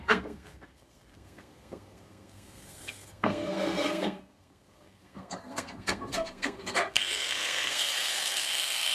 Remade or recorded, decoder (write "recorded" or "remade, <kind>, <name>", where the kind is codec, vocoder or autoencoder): remade, codec, SNAC